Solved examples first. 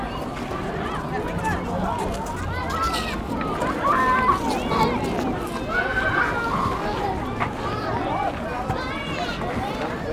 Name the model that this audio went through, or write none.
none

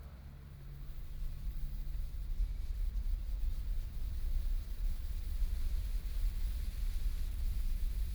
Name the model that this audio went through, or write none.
vocoder, BigVGAN v2